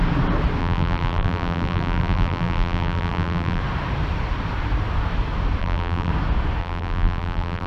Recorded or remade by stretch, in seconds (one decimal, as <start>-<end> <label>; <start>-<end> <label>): 0.0-0.6 recorded; 0.6-3.6 remade; 3.6-5.6 recorded; 5.6-6.1 remade; 6.1-6.6 recorded; 6.6-7.7 remade